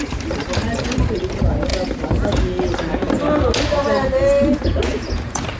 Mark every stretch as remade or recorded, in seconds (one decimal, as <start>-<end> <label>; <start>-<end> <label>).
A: 0.0-1.7 remade; 1.7-5.1 recorded; 5.1-5.6 remade